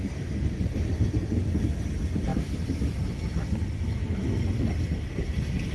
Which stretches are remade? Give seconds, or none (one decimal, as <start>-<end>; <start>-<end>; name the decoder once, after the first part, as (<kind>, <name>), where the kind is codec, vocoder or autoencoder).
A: none